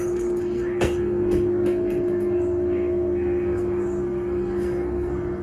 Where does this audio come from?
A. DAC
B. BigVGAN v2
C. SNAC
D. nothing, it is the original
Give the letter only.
C